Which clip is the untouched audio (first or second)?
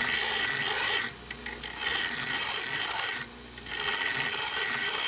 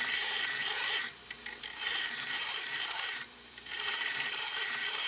first